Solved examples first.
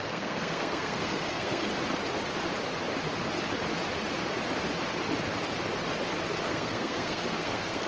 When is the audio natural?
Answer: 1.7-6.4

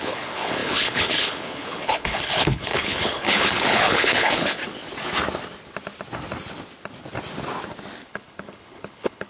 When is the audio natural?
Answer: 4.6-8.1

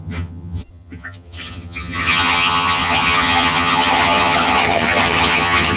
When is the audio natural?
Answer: none